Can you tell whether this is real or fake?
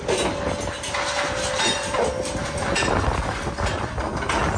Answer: real